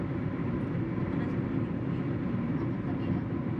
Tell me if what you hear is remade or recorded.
recorded